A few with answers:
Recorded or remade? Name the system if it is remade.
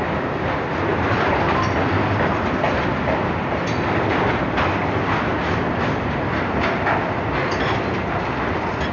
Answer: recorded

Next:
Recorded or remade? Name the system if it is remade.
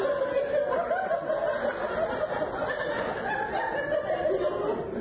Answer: recorded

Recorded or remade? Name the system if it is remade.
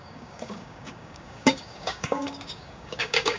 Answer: remade, codec, DAC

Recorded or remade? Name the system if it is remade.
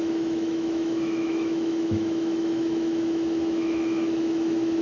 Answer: remade, autoencoder, DAC-VAE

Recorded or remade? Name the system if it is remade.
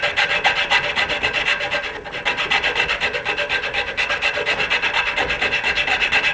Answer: recorded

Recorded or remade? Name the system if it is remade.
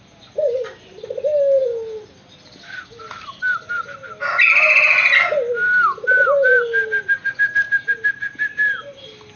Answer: recorded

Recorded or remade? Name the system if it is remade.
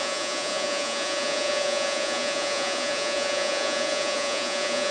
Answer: remade, vocoder, Vocos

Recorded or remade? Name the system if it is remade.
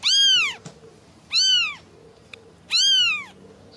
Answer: recorded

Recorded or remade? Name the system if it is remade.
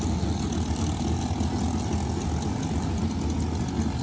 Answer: recorded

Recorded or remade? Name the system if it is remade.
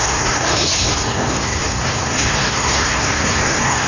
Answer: remade, codec, SNAC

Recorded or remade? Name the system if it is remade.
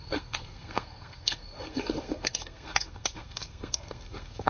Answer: remade, codec, SNAC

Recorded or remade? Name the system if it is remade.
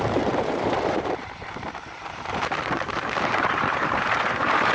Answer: remade, vocoder, BigVGAN v2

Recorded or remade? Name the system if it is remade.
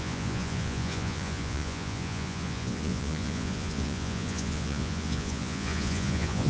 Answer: remade, vocoder, Vocos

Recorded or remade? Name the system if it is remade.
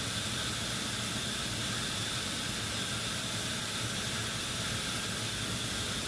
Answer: recorded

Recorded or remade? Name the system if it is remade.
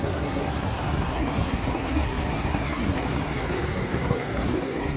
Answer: remade, codec, SNAC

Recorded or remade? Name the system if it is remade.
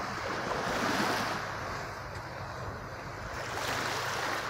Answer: recorded